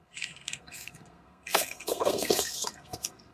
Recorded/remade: remade